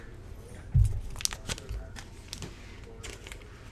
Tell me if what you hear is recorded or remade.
recorded